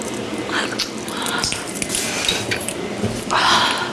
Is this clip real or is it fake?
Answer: real